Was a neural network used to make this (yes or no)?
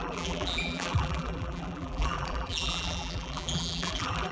yes